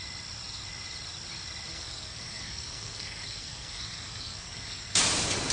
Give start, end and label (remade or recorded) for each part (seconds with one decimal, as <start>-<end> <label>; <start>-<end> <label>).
0.0-1.7 recorded; 1.7-5.0 remade; 5.0-5.5 recorded